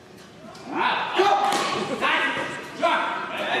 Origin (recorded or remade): recorded